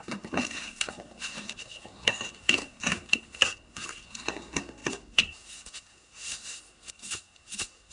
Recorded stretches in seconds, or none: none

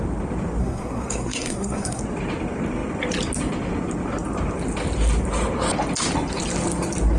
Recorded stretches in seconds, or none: 0.0-0.6; 2.0-7.2

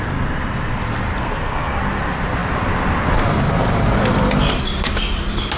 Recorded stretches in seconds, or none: 0.0-1.2; 1.8-5.6

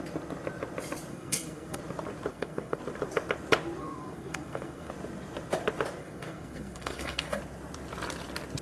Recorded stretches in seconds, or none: 0.0-1.1; 1.8-2.3; 2.8-3.8; 4.9-6.0; 7.4-8.6

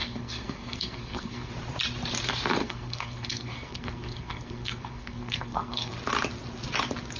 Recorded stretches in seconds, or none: 1.5-2.6; 5.9-7.2